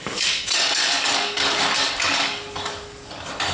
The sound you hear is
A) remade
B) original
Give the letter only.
A